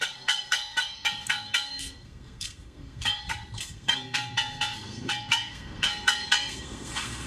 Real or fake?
fake